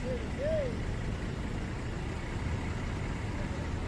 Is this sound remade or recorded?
recorded